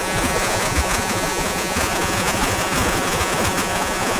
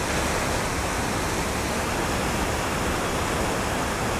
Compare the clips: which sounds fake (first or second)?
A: first